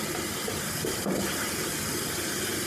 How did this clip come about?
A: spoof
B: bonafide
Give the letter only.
B